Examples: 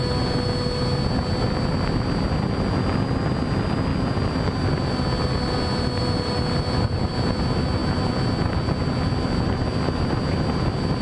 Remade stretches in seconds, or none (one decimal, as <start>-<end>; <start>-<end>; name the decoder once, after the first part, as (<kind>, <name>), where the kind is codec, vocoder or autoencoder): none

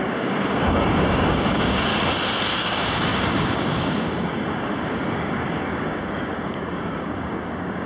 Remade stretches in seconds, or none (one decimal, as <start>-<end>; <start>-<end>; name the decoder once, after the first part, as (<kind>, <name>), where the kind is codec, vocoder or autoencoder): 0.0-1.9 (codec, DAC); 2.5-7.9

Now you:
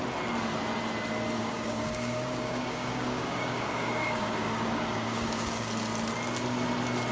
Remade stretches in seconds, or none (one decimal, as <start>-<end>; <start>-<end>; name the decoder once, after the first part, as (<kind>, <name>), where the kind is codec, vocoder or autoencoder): 1.4-5.7 (codec, DAC)